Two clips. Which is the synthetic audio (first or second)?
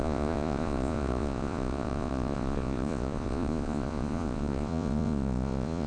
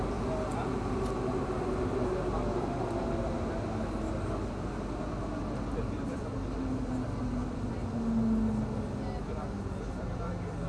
first